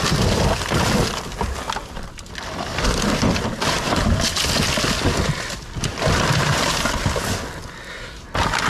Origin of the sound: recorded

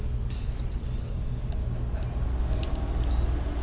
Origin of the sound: recorded